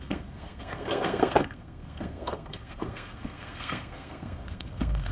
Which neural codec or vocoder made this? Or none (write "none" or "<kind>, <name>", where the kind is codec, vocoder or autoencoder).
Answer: codec, SNAC